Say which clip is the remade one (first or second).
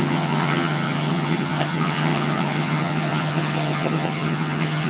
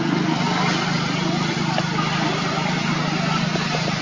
first